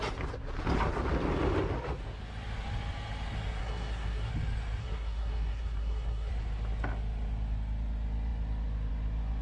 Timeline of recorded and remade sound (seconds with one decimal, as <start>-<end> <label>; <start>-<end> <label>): 0.0-3.6 recorded; 3.6-4.3 remade; 4.3-4.8 recorded; 4.8-6.3 remade; 6.3-9.4 recorded